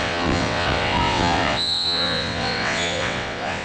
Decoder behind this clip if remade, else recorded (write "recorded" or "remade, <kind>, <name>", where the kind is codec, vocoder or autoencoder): remade, vocoder, WaveNeXt